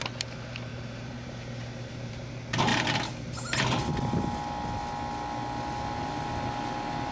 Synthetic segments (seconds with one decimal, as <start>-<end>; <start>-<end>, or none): 0.7-2.3